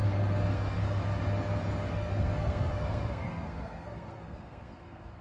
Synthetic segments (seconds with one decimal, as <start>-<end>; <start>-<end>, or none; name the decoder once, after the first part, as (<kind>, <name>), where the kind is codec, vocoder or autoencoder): 0.0-1.0 (codec, SNAC); 1.9-5.2